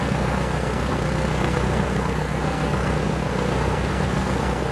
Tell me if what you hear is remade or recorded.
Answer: remade